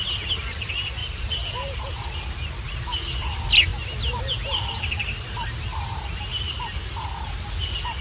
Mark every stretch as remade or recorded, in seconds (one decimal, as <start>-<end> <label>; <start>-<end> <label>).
0.0-1.0 recorded; 1.0-1.8 remade; 1.8-8.0 recorded